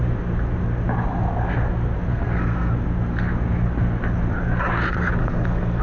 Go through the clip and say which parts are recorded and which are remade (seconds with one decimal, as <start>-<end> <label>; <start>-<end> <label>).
0.0-2.1 recorded; 2.1-2.7 remade; 2.7-5.2 recorded; 5.2-5.8 remade